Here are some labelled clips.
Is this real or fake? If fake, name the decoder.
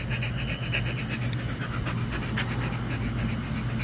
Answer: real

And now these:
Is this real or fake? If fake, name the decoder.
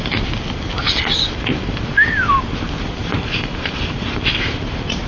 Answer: real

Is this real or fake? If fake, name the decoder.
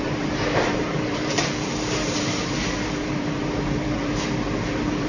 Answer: fake, vocoder, BigVGAN v2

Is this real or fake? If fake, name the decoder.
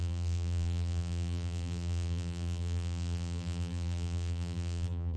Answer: fake, vocoder, BigVGAN v2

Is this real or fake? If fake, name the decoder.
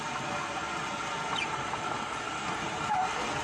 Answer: real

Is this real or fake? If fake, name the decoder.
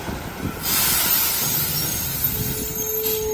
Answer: real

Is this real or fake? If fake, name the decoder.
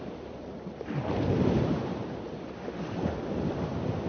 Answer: real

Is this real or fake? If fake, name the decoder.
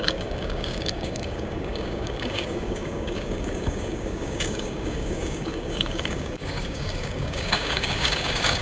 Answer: fake, codec, DAC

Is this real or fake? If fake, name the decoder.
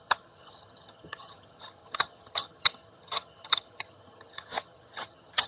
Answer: fake, vocoder, HiFi-GAN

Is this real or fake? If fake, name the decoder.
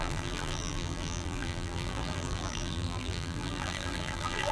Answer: fake, vocoder, BigVGAN v2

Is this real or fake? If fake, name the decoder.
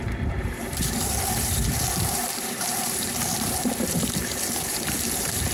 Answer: fake, vocoder, BigVGAN v2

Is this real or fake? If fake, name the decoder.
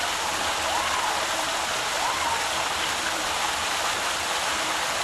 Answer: real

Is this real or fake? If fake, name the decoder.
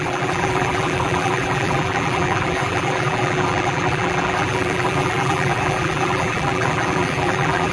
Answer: fake, vocoder, BigVGAN v2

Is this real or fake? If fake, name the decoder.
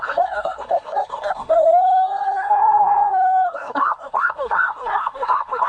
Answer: fake, codec, SNAC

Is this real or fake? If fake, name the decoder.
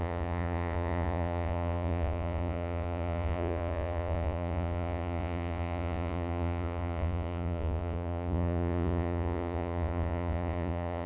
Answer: fake, vocoder, Vocos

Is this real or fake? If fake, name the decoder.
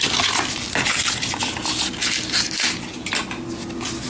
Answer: real